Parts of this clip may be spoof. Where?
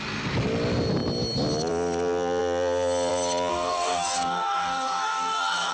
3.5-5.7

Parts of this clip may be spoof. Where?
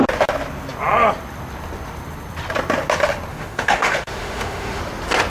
3.3-4.8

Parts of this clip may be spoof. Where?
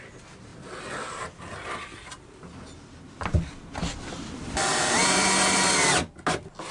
none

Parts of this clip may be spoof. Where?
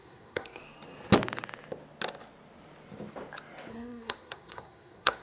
0.0-0.6; 3.7-5.2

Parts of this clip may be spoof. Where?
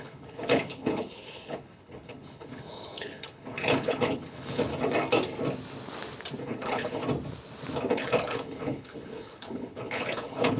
0.0-4.7; 6.4-7.0; 7.9-10.6